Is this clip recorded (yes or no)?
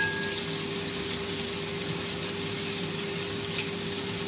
yes